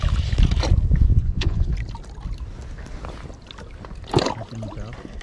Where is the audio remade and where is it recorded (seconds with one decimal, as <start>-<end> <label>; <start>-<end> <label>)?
0.0-1.1 recorded; 1.1-1.7 remade; 1.7-5.2 recorded